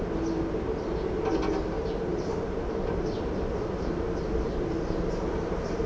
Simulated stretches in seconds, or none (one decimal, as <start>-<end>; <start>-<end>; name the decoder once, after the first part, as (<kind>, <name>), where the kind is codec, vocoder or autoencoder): 2.1-5.9 (vocoder, BigVGAN v2)